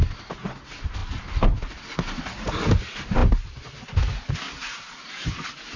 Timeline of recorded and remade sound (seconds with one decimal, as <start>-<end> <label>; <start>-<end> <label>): 0.0-5.8 recorded